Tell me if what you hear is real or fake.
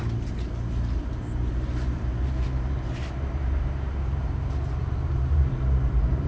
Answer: fake